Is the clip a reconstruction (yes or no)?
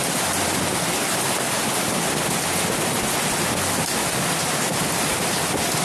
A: no